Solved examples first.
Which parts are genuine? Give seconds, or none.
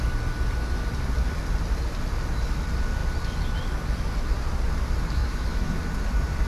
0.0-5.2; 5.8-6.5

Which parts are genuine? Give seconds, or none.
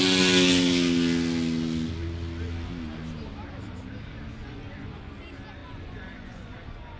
0.0-4.4; 5.1-5.6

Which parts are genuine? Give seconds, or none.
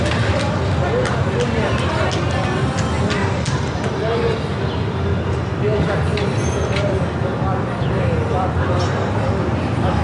0.0-6.1; 7.1-10.0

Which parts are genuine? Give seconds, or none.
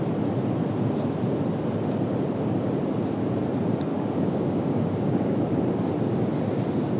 0.0-3.9; 5.6-7.0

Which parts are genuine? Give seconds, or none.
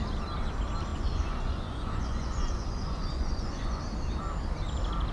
0.0-0.9; 3.8-5.1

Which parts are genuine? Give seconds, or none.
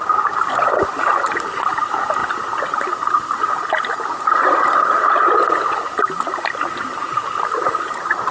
0.0-8.3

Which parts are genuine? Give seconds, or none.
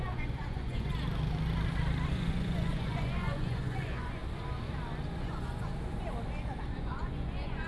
0.9-2.1; 4.2-5.1; 5.7-6.7